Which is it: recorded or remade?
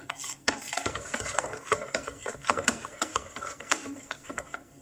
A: remade